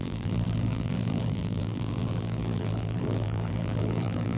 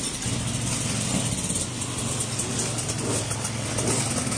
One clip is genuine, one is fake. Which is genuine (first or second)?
second